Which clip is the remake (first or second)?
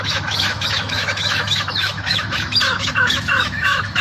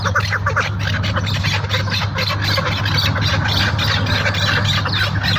first